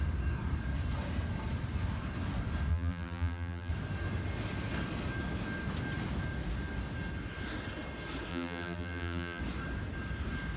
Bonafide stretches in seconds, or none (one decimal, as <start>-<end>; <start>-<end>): 0.0-2.7; 3.7-8.3; 9.4-10.6